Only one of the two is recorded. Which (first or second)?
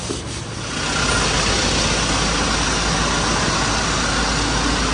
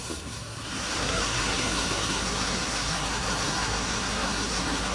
first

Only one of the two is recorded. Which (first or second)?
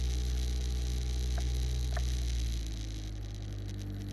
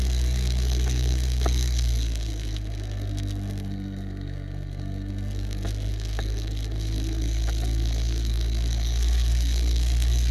first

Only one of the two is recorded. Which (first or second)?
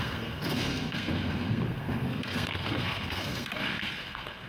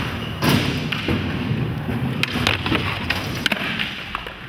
second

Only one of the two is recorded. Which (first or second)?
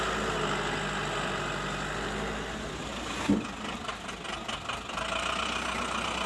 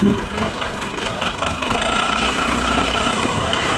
first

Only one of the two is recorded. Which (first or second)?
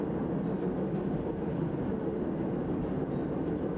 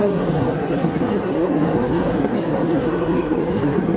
first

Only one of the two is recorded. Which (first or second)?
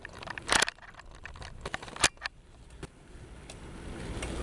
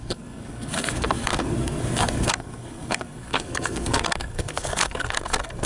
first